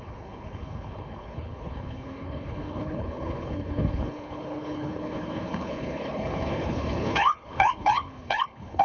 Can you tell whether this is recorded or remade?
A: remade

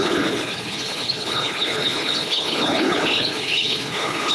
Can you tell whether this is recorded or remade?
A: remade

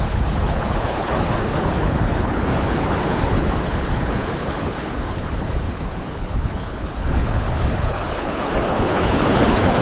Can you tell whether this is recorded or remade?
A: remade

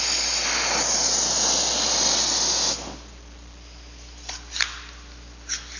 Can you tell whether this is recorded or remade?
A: recorded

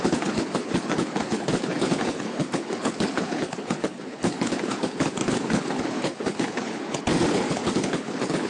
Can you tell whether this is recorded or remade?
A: remade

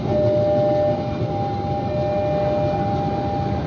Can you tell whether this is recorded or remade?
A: recorded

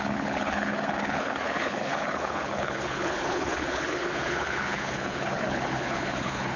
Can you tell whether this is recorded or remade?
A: remade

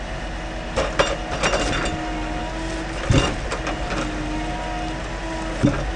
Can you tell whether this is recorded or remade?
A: recorded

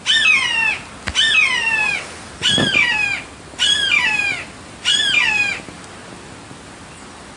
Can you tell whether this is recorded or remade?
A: recorded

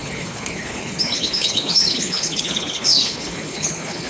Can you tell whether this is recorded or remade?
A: remade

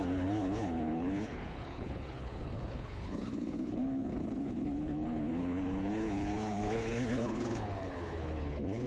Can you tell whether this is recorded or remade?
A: remade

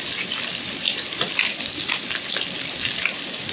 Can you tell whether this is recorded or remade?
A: recorded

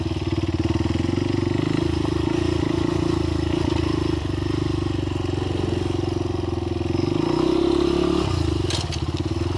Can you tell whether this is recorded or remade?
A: recorded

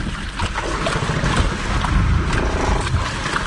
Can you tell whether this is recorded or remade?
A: recorded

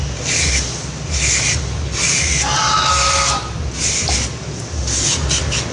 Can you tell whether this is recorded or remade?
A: recorded